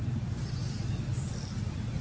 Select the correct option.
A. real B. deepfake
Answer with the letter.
A